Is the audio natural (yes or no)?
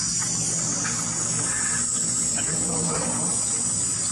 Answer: yes